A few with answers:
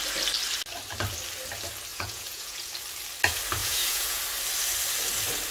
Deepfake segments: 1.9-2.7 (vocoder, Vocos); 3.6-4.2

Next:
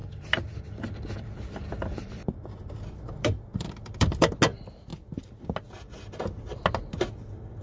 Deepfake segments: 0.0-4.4 (vocoder, BigVGAN v2)

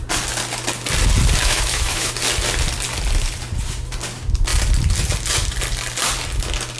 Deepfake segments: 1.4-2.1 (autoencoder, DAC-VAE)

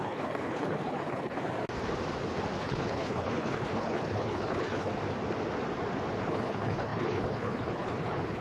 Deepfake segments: 0.0-1.4 (codec, HILCodec); 2.6-4.9; 6.2-8.4

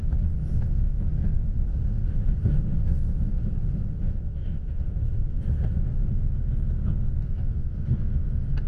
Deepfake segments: 1.7-6.1 (autoencoder, DAC-VAE)